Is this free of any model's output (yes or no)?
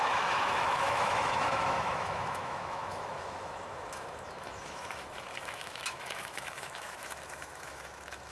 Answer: no